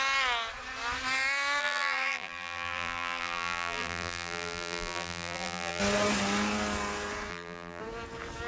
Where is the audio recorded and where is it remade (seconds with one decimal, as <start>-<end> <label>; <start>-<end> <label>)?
0.0-1.6 recorded; 1.6-5.8 remade; 5.8-7.3 recorded; 7.3-7.8 remade; 7.8-8.5 recorded

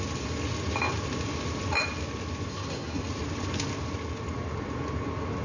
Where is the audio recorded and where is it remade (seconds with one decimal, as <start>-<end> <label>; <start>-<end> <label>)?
0.0-2.5 recorded; 2.5-3.0 remade; 3.0-5.4 recorded